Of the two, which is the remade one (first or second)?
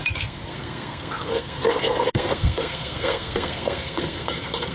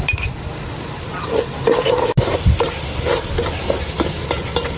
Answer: first